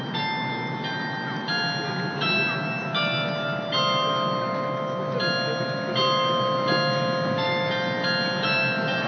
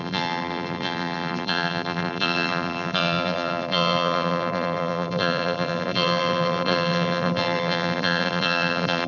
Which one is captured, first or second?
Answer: first